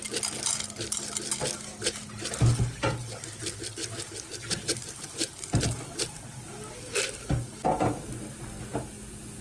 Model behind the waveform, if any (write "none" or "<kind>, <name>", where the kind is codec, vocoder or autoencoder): none